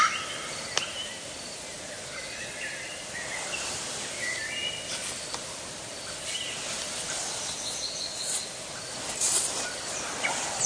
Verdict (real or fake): real